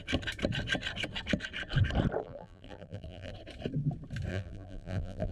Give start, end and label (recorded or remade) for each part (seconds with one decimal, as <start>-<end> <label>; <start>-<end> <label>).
0.0-2.2 recorded; 2.2-3.3 remade; 3.3-4.3 recorded; 4.3-5.3 remade